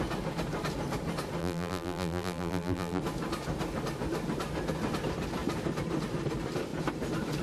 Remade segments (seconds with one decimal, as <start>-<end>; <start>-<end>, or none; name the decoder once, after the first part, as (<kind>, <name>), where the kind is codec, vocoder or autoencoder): 1.4-3.0 (vocoder, BigVGAN v2)